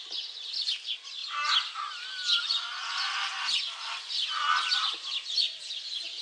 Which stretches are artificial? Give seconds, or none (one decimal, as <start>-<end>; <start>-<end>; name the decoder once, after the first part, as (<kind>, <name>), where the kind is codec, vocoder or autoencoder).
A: none